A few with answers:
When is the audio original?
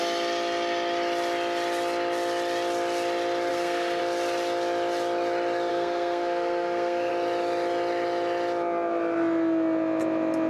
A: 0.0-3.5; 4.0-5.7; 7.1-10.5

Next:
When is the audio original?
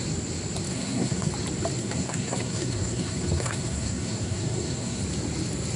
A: 0.0-0.7; 1.3-1.8; 5.0-5.8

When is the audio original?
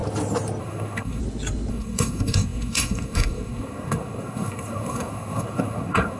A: 0.0-0.6; 1.2-1.7